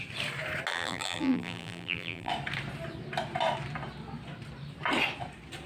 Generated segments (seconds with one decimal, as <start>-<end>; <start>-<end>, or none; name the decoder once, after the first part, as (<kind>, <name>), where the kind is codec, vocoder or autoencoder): 0.7-2.3 (vocoder, BigVGAN v2)